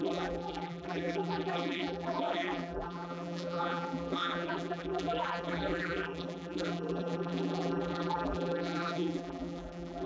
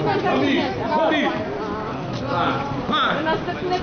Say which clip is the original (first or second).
second